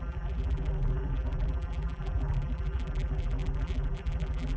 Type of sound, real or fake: fake